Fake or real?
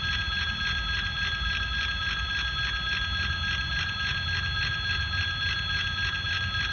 real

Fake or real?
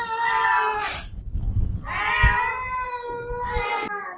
real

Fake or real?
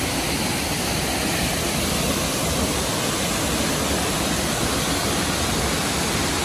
real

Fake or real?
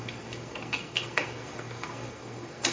fake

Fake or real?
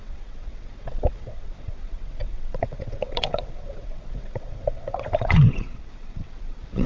fake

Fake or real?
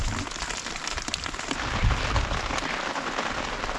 real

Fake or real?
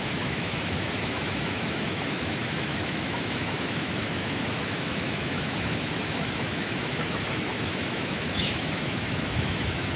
fake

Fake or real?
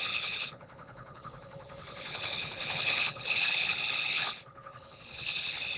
fake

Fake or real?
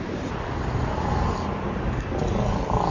real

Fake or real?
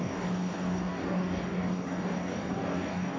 fake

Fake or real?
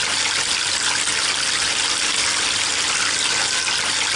real